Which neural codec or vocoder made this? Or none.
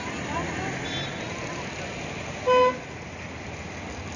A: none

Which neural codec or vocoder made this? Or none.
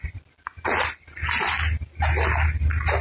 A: none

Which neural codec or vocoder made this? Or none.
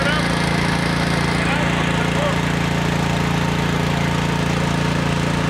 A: none